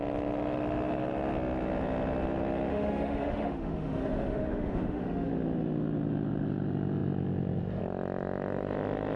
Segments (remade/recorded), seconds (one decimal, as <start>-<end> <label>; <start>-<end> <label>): 0.0-2.7 recorded; 2.7-5.3 remade; 5.3-9.2 recorded

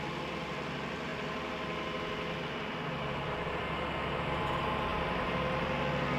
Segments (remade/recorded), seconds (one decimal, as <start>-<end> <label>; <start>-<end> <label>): 0.0-6.2 recorded

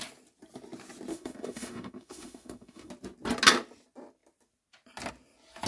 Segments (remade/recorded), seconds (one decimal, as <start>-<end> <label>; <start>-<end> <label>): 0.0-1.1 recorded; 1.1-2.9 remade; 2.9-5.7 recorded

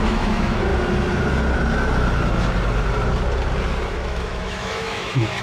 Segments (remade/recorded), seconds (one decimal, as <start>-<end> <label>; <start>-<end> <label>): 0.0-0.7 remade; 0.7-3.9 recorded; 3.9-5.4 remade

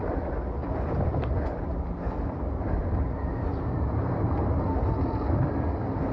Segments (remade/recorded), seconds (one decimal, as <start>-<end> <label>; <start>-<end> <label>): 0.0-6.1 recorded